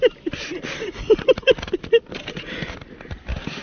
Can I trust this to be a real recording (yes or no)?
yes